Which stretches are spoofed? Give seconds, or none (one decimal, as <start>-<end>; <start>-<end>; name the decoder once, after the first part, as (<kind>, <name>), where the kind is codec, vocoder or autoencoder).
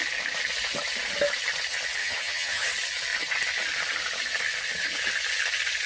2.0-2.7 (vocoder, HiFi-GAN)